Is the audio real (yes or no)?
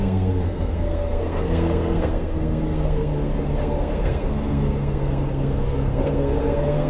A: no